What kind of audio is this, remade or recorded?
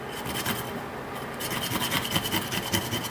recorded